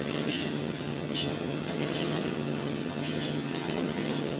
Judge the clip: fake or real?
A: fake